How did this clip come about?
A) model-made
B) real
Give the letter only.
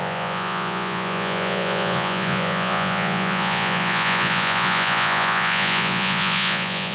A